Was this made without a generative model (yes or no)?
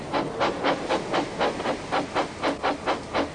yes